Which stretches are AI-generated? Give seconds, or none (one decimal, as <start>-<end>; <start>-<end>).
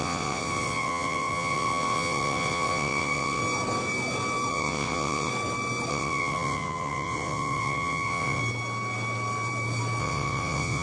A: 0.0-3.4; 4.5-5.3; 5.9-8.4; 10.0-10.8